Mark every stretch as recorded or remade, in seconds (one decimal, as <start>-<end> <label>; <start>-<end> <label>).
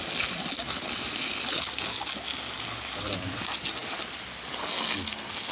0.0-5.5 recorded